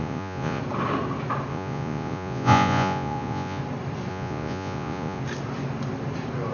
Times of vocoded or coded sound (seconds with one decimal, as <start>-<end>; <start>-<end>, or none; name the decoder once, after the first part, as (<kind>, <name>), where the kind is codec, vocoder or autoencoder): 0.0-0.6 (vocoder, Vocos); 1.5-3.6; 4.1-5.2

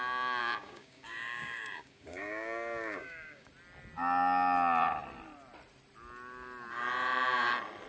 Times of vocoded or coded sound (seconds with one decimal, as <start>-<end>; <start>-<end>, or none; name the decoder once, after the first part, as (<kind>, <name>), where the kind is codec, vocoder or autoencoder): 0.4-3.5 (codec, DAC)

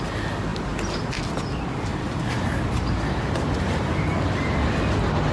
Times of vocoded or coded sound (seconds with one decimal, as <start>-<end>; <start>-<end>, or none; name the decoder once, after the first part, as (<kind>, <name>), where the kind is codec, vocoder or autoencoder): 0.5-1.2 (vocoder, BigVGAN v2); 1.9-4.0

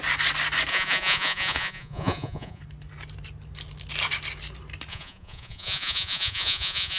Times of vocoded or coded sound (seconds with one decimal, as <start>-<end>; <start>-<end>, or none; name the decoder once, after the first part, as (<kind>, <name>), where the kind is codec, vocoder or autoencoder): 0.7-2.6 (vocoder, Vocos); 4.9-7.0

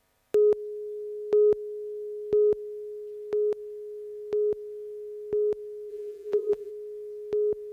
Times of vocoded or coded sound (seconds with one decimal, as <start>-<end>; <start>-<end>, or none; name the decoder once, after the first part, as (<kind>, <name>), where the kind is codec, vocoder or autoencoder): 5.9-6.7 (vocoder, BigVGAN v2)

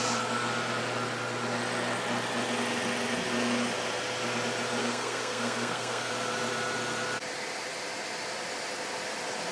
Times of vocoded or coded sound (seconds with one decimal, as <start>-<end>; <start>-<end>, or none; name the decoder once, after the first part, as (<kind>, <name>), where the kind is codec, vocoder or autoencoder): 4.8-6.1 (codec, SNAC)

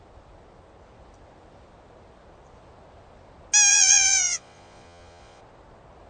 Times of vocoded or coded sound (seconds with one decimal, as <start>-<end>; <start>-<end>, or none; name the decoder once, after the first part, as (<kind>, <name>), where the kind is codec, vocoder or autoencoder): 3.7-5.4 (vocoder, Vocos)

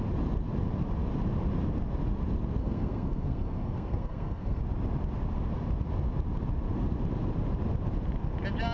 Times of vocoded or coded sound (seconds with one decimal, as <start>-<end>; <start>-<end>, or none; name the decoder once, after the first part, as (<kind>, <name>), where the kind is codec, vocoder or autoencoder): 2.6-4.6 (codec, SNAC)